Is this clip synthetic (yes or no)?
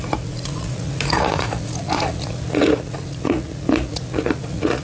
yes